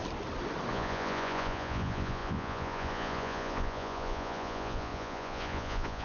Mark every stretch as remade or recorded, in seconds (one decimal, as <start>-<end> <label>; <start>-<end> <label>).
0.0-0.7 recorded; 0.7-6.0 remade